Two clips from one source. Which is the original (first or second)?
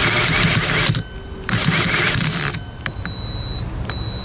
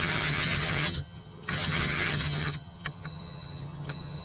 first